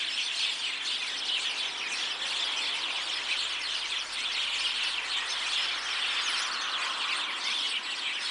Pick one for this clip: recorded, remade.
recorded